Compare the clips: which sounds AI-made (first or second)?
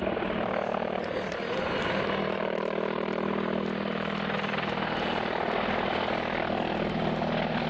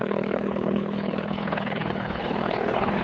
second